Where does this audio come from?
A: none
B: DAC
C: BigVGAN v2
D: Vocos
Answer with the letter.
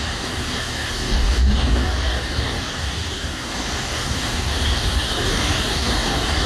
B